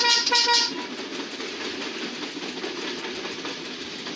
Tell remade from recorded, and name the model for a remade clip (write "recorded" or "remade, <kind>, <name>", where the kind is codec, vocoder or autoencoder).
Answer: recorded